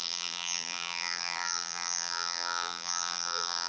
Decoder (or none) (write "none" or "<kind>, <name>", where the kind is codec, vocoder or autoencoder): vocoder, BigVGAN v2